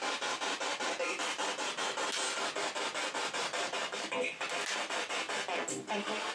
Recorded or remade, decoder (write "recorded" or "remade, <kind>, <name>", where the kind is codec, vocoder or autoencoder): recorded